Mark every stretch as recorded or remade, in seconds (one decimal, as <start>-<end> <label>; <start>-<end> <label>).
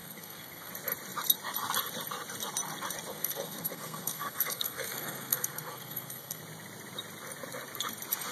0.0-0.7 remade; 0.7-3.1 recorded; 3.1-6.4 remade; 6.4-8.3 recorded